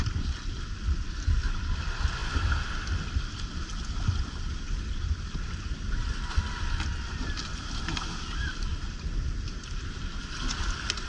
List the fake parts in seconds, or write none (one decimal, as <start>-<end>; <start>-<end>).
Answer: none